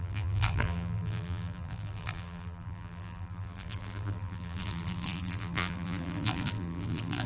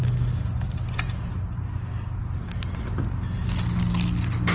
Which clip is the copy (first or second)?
first